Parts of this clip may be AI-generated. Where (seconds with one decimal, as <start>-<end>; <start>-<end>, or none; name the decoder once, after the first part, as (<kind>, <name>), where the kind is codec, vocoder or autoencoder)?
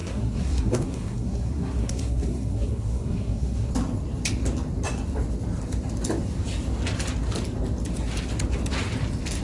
0.0-3.7 (codec, SNAC)